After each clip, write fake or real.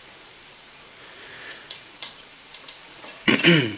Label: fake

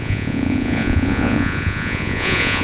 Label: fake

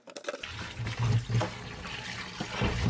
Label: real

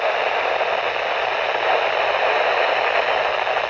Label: real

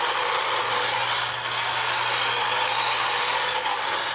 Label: real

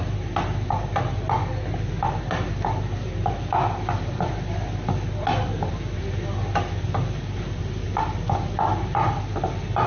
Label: real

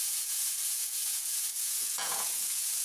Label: fake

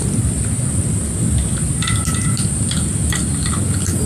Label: real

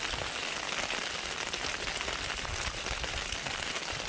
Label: real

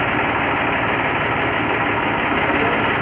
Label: real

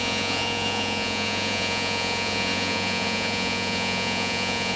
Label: fake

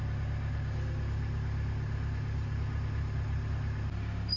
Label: real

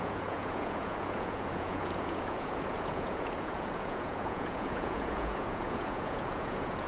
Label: fake